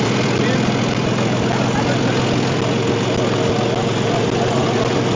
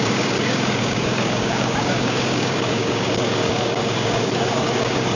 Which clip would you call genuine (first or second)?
first